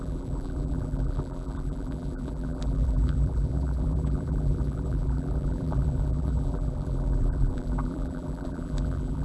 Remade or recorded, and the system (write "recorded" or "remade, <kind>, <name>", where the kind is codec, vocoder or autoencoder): remade, vocoder, BigVGAN v2